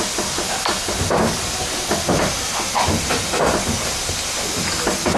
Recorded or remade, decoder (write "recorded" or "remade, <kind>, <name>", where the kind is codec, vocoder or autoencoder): recorded